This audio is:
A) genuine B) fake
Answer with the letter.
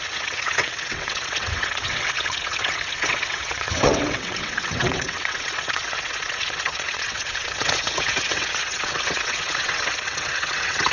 B